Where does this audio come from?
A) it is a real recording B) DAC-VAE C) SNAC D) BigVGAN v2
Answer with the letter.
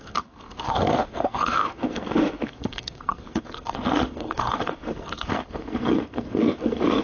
C